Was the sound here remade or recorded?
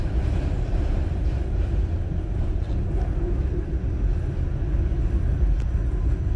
recorded